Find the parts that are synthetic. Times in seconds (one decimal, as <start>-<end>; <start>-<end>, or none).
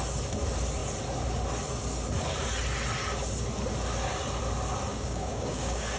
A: 4.9-6.0